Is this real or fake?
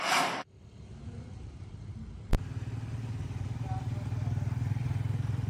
real